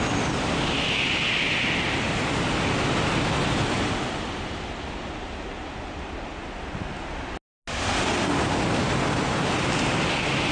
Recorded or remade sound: recorded